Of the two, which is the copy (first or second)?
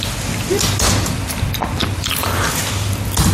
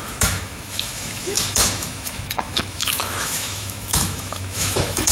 second